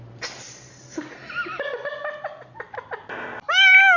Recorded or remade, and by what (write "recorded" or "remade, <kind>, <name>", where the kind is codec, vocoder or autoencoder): recorded